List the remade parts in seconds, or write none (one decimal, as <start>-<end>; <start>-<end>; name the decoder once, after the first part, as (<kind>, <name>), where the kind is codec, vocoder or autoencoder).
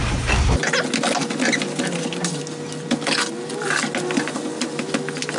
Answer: none